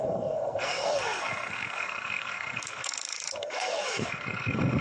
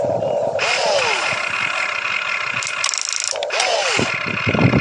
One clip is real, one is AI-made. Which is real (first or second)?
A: second